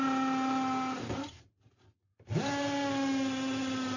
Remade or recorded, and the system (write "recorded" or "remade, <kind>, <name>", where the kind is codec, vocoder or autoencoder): recorded